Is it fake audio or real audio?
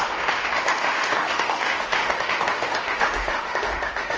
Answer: fake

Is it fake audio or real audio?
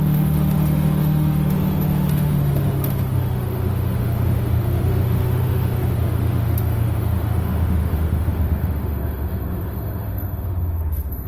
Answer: fake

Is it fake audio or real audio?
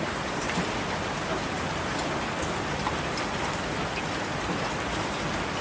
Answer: real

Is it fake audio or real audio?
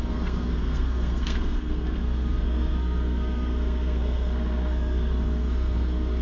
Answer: fake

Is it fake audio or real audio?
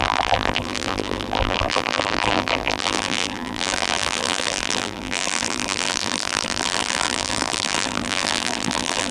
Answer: fake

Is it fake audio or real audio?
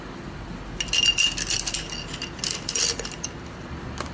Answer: real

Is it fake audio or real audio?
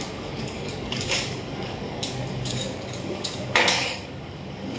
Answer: fake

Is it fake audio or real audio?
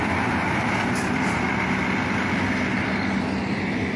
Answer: real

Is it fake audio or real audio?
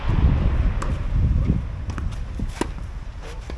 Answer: real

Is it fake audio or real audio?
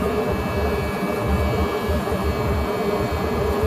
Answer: real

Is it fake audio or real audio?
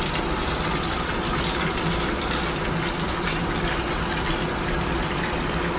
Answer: real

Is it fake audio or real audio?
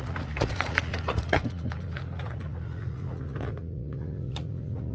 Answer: fake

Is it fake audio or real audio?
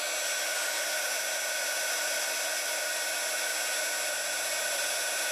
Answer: real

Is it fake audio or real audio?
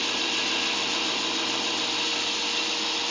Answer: real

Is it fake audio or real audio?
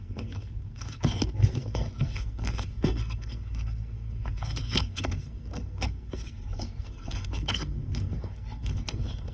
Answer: fake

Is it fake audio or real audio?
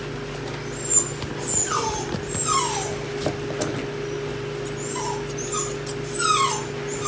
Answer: real